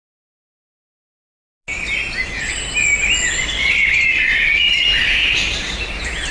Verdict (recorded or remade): recorded